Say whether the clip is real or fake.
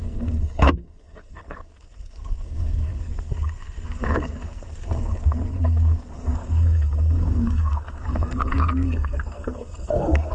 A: fake